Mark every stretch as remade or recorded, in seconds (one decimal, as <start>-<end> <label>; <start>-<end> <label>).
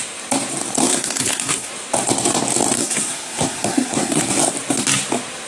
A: 0.0-0.8 recorded; 0.8-1.7 remade; 1.7-2.8 recorded; 2.8-4.2 remade; 4.2-5.5 recorded